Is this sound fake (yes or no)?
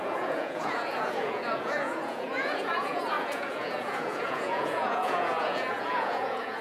yes